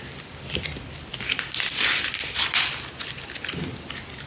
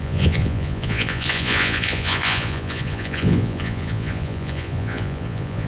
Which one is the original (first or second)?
first